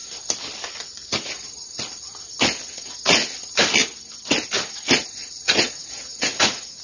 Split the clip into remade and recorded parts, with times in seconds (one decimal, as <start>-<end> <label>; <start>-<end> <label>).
0.0-5.2 recorded; 5.2-6.8 remade